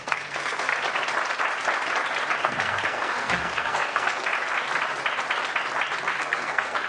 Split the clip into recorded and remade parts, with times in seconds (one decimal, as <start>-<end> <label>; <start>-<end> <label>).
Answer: 0.0-0.7 remade; 0.7-2.4 recorded; 2.4-4.3 remade; 4.3-6.2 recorded; 6.2-6.9 remade